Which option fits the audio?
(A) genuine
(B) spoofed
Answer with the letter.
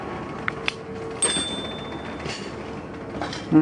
A